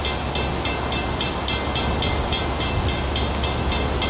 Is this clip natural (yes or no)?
yes